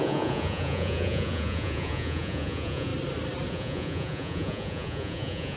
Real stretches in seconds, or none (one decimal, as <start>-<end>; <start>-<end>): 2.9-3.5